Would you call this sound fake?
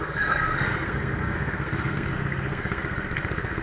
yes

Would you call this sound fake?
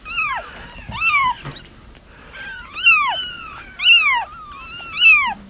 no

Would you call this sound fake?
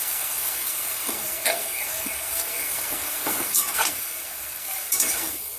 yes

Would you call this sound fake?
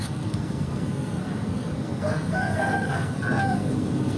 yes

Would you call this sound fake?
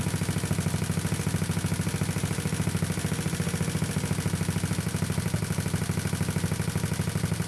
no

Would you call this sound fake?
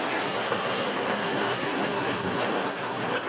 yes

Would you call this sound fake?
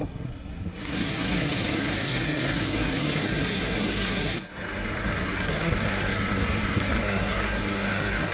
yes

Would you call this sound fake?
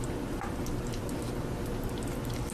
no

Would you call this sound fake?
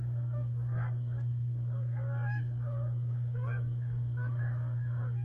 yes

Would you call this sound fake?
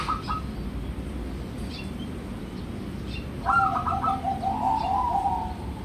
no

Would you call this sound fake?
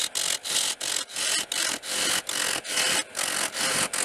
no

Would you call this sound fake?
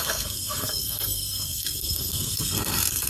yes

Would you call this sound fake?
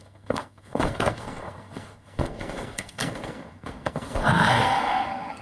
yes